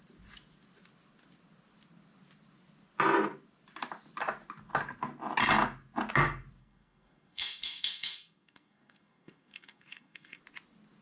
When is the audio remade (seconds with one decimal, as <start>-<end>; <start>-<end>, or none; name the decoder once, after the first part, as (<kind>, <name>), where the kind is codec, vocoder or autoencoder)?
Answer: 6.6-10.4 (codec, SNAC)

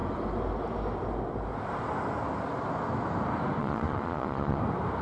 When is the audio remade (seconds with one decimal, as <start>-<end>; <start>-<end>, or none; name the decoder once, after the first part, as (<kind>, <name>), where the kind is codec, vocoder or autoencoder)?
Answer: 3.6-4.6 (vocoder, Vocos)

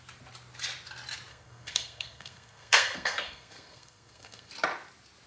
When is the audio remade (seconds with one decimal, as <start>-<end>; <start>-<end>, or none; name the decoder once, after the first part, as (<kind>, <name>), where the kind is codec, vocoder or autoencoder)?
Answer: 1.3-4.5 (codec, SNAC)

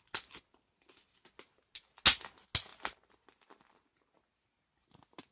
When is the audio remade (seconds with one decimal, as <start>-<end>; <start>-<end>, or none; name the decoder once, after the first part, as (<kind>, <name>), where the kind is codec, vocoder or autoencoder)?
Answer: none

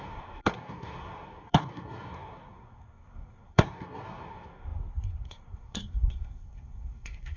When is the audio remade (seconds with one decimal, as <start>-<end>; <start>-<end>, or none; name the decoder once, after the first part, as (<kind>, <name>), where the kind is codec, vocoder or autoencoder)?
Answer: 0.0-7.4 (codec, SNAC)